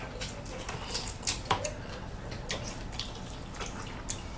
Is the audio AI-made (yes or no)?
no